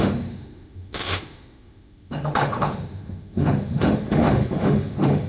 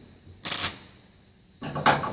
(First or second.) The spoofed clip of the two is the first